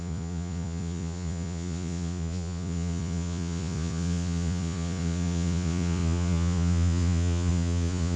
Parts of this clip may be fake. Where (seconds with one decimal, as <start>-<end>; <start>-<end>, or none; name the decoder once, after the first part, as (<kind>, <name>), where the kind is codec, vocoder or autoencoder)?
0.0-8.2 (vocoder, Vocos)